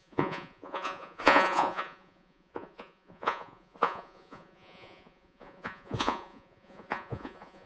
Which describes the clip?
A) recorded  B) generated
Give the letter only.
B